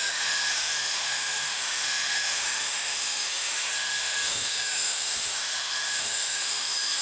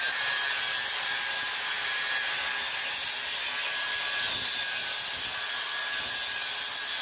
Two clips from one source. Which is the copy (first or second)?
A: first